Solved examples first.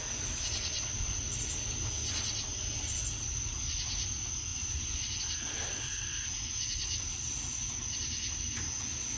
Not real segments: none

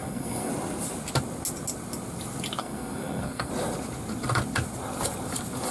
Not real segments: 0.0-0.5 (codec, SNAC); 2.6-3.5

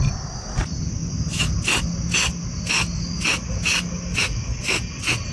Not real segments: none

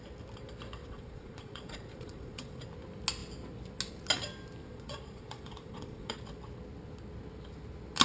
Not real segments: 0.8-2.6 (vocoder, Vocos); 4.6-6.2

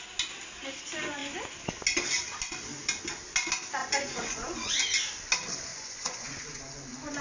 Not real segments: 3.8-4.7 (vocoder, Vocos); 5.7-6.6

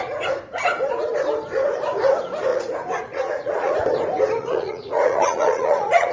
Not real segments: 2.5-3.7 (vocoder, Vocos); 4.4-6.1